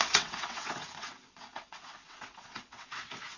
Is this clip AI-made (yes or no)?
yes